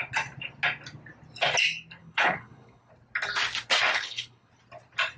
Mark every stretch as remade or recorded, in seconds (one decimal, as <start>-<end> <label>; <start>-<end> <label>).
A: 0.0-2.0 recorded; 2.0-2.9 remade; 2.9-3.9 recorded; 3.9-4.5 remade; 4.5-5.2 recorded